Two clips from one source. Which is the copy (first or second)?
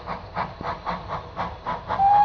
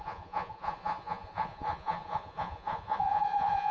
second